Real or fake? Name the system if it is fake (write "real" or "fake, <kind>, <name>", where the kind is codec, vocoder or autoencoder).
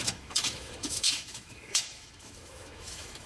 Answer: fake, autoencoder, DAC-VAE